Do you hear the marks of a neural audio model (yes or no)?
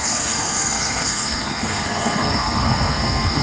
yes